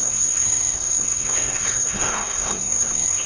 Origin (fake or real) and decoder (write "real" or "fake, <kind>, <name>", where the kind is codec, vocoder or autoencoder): fake, codec, SNAC